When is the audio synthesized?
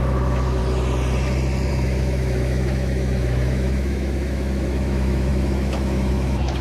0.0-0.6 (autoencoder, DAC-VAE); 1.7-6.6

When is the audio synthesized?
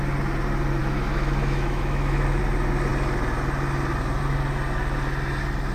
0.8-2.4 (autoencoder, DAC-VAE)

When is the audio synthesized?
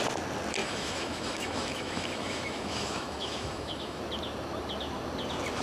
0.6-4.0 (autoencoder, DAC-VAE)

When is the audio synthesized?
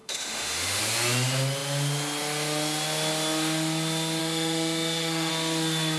0.0-0.8 (autoencoder, DAC-VAE); 4.2-5.3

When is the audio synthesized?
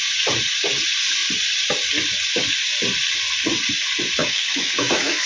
4.2-5.3 (autoencoder, DAC-VAE)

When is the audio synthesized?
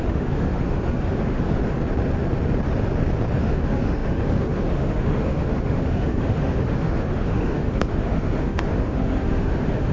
0.0-1.6 (autoencoder, DAC-VAE); 3.4-9.9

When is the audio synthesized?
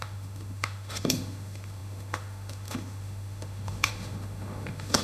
0.0-5.0 (autoencoder, DAC-VAE)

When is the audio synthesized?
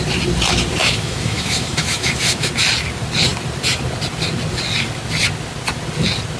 0.8-2.5 (autoencoder, DAC-VAE)